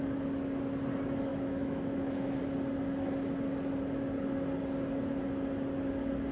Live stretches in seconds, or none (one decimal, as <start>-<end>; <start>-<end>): 0.0-1.3; 2.4-6.3